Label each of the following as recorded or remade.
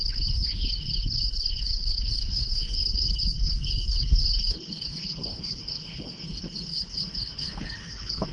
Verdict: remade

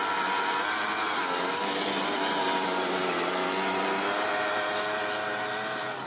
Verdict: recorded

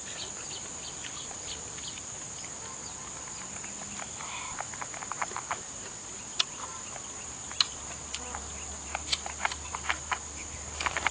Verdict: recorded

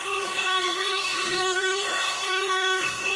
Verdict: remade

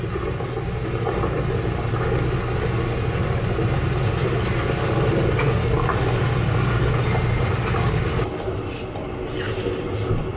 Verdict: recorded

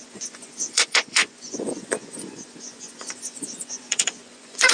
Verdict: remade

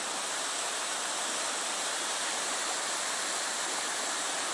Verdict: recorded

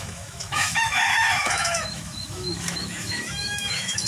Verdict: remade